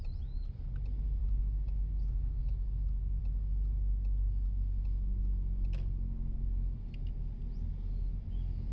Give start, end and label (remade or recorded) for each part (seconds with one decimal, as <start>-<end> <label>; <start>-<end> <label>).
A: 0.0-1.2 recorded; 1.2-3.2 remade; 3.2-8.7 recorded

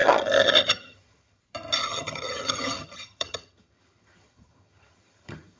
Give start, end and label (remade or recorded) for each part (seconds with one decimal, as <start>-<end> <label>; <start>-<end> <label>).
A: 0.0-1.4 remade; 1.4-1.8 recorded; 1.8-5.6 remade

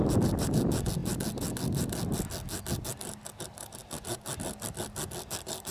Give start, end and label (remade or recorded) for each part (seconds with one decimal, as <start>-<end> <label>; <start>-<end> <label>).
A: 0.0-5.7 recorded

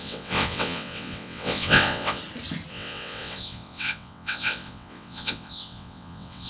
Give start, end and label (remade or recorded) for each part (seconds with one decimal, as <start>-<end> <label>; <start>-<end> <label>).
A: 0.0-2.2 remade; 2.2-2.7 recorded; 2.7-6.5 remade

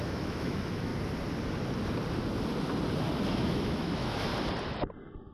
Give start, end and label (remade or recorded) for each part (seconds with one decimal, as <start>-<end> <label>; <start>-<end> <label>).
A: 0.0-0.9 remade; 0.9-3.3 recorded; 3.3-4.3 remade; 4.3-5.3 recorded

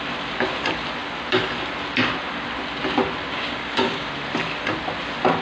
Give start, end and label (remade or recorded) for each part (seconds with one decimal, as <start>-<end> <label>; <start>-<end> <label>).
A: 0.0-3.3 recorded; 3.3-4.1 remade; 4.1-5.4 recorded